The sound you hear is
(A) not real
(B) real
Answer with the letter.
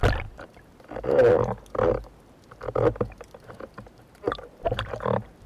B